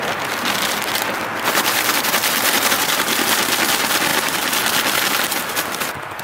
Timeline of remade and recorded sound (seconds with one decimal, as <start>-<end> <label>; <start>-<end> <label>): 0.0-6.2 recorded